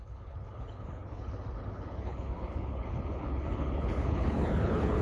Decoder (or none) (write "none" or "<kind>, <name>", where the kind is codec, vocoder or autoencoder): codec, HILCodec